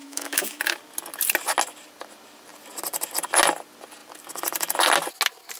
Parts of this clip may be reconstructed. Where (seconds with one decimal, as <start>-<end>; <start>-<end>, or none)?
0.0-0.8